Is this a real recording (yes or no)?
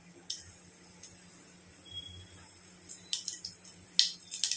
yes